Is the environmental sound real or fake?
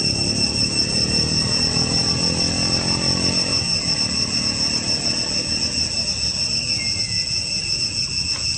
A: real